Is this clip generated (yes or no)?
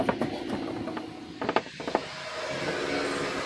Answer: no